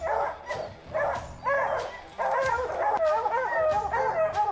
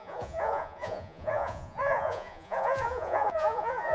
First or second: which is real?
first